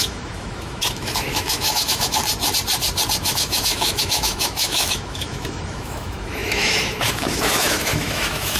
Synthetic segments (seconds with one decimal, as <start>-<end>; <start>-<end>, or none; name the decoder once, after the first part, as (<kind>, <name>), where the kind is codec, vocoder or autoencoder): 0.0-2.2 (autoencoder, DAC-VAE); 3.2-8.6